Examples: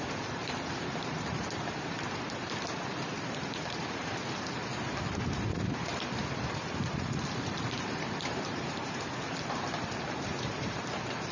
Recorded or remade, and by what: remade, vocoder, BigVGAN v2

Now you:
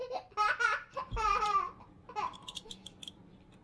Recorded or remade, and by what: remade, vocoder, BigVGAN v2